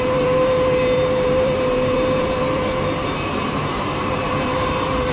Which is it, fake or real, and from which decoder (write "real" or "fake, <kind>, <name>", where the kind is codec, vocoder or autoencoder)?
fake, vocoder, BigVGAN v2